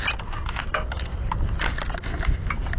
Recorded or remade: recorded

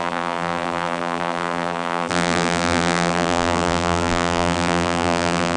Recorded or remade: remade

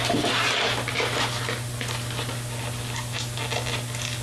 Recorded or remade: recorded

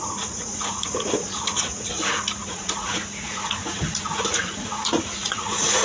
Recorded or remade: remade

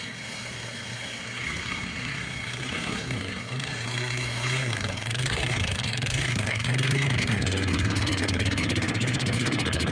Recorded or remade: remade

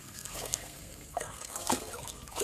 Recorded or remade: remade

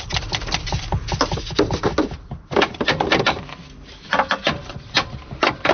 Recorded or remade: recorded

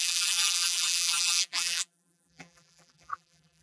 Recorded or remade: remade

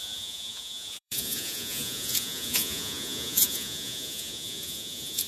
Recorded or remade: remade